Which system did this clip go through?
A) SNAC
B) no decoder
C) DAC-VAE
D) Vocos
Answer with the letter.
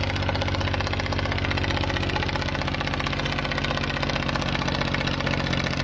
B